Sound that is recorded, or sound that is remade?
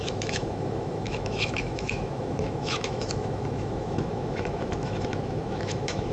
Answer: remade